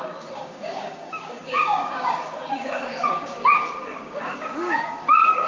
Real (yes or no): no